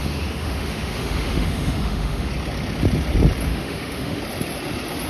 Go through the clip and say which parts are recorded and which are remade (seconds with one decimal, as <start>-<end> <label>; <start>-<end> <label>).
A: 0.0-2.3 remade; 2.3-3.5 recorded; 3.5-4.2 remade; 4.2-5.1 recorded